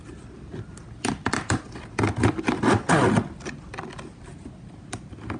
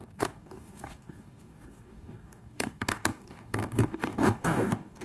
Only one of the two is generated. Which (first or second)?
second